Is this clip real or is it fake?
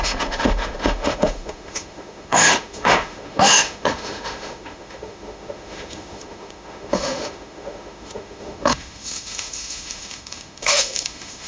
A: fake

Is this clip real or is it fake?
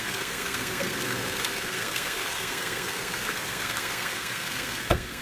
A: fake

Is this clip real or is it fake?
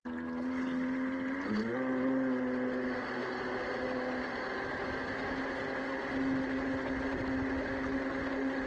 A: real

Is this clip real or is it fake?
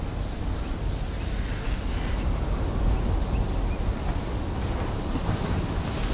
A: real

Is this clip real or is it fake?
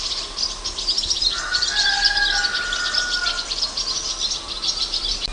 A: real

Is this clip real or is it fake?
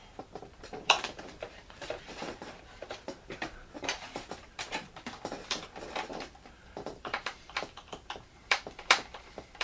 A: fake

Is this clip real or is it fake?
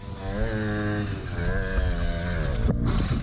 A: real